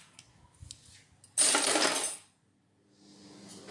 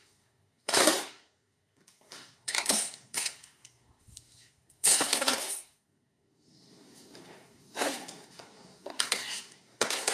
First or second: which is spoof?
second